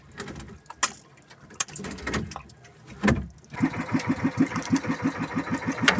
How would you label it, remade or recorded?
recorded